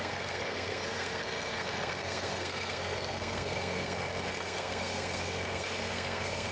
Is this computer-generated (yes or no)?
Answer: yes